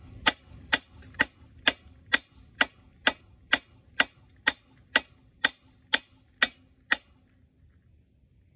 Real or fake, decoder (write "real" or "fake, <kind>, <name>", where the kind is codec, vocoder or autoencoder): real